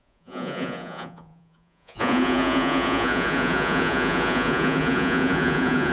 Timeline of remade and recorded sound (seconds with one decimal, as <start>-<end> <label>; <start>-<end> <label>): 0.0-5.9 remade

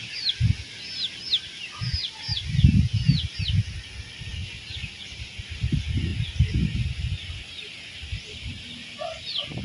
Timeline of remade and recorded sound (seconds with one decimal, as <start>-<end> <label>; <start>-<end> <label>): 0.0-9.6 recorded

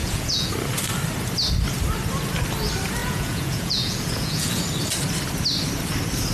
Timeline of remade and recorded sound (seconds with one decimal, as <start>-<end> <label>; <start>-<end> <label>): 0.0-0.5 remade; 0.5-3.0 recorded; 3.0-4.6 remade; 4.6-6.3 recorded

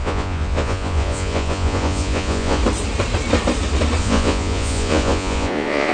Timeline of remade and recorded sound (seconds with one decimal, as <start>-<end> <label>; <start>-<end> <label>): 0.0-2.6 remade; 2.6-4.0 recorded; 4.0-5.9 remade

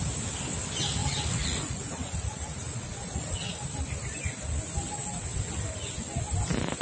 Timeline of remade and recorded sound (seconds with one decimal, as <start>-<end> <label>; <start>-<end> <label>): 0.0-1.0 recorded; 1.0-3.3 remade; 3.3-6.8 recorded

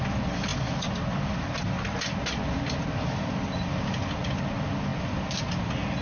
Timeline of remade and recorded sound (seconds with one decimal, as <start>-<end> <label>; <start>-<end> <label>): 0.0-6.0 recorded